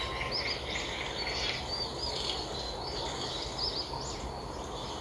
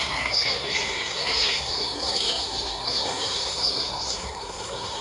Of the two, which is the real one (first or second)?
first